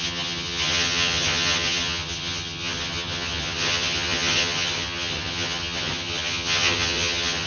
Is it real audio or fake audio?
fake